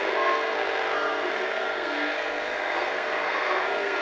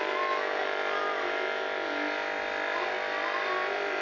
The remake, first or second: first